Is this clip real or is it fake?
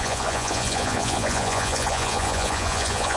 fake